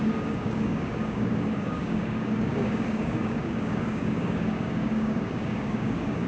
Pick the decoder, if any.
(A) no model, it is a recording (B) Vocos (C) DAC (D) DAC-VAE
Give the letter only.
C